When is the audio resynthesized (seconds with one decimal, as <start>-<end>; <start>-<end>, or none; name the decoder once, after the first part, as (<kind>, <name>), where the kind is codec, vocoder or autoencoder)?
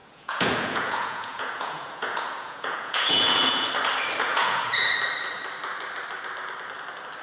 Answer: 0.0-3.7 (vocoder, Vocos); 4.3-4.9